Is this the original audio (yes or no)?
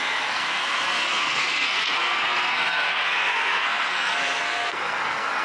no